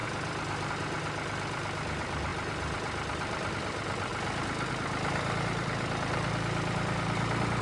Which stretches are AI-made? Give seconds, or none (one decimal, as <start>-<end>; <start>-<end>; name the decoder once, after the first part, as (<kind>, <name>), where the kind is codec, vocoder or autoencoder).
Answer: 0.0-4.1 (vocoder, BigVGAN v2); 4.7-7.6